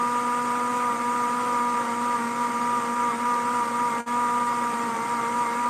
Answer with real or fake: real